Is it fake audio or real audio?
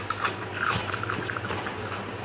real